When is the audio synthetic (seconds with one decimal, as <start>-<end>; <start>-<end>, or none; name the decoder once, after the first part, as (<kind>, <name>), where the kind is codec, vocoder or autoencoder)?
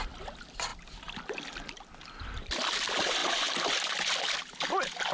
none